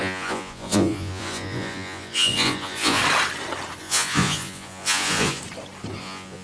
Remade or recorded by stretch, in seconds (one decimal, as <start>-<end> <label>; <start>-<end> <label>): 0.0-3.0 remade; 3.0-3.8 recorded; 3.8-5.4 remade; 5.4-6.0 recorded; 6.0-6.4 remade